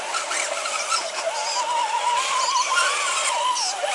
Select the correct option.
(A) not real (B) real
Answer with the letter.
B